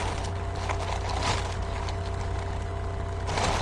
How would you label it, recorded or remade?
recorded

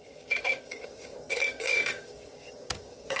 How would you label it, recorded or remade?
remade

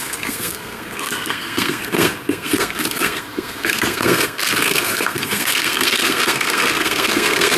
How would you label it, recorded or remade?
remade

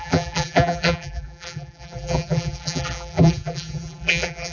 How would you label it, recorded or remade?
remade